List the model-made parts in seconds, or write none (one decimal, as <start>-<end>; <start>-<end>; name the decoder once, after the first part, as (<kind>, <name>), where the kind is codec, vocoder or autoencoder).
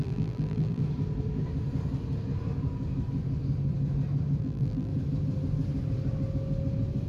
0.0-0.8 (vocoder, BigVGAN v2); 4.4-4.9